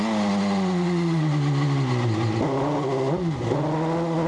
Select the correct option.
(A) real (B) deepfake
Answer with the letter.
A